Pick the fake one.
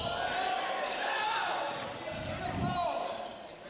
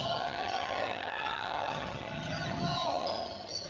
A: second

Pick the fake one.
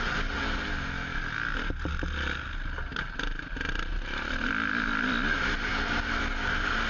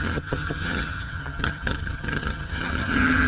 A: second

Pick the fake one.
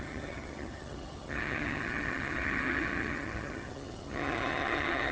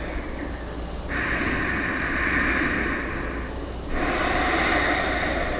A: first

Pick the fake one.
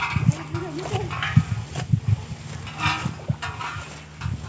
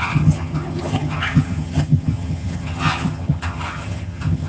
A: second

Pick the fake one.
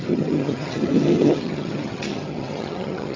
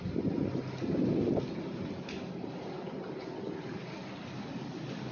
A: first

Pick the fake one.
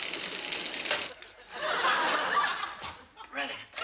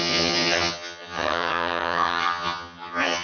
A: second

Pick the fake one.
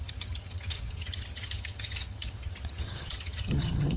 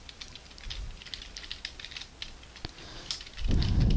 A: first